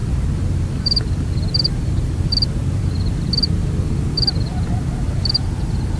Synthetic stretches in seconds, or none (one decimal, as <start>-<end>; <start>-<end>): 0.0-2.1; 2.6-5.4